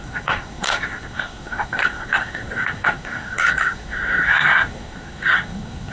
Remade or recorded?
remade